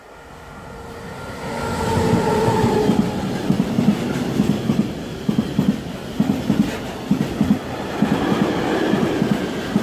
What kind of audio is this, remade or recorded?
recorded